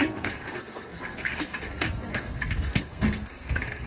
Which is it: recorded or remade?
remade